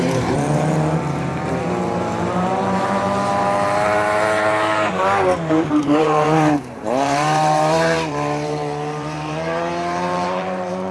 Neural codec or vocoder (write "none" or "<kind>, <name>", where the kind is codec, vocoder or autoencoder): vocoder, BigVGAN v2